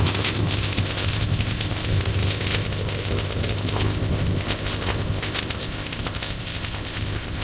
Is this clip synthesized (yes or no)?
yes